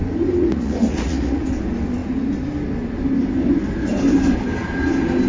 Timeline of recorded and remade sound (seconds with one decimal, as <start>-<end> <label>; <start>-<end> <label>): 0.0-0.4 recorded; 0.4-1.4 remade; 1.4-5.3 recorded